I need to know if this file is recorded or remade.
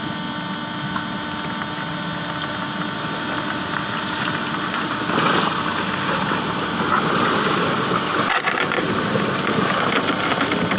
recorded